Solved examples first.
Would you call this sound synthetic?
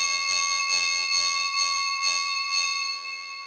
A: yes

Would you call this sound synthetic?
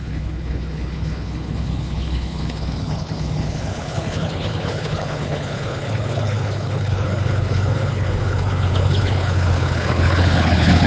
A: yes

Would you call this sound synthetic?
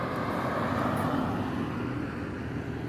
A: no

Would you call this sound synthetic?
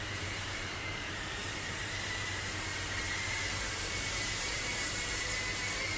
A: yes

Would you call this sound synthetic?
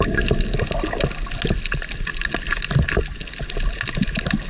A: no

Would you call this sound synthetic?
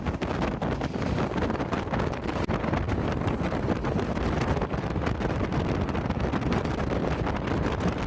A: no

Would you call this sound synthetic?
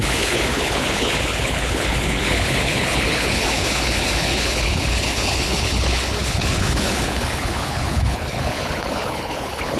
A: yes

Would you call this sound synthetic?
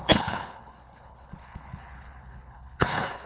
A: yes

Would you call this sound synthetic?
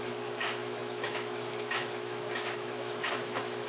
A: yes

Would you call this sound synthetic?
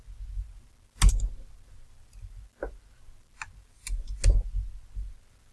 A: no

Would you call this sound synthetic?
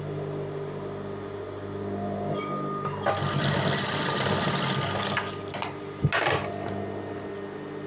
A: no